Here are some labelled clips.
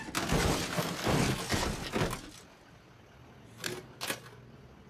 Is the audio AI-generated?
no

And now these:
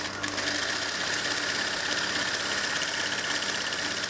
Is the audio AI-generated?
no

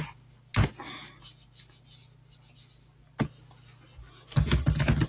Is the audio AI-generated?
no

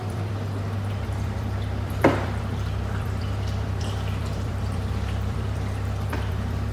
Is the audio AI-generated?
yes